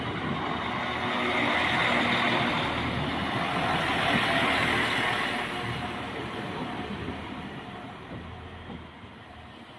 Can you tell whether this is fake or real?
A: real